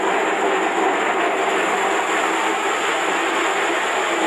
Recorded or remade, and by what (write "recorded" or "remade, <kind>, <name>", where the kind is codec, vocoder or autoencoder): recorded